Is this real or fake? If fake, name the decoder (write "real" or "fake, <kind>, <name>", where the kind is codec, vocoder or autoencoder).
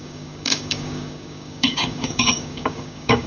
fake, codec, DAC